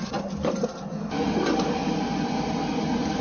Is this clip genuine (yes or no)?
yes